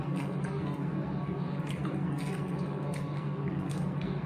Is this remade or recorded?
remade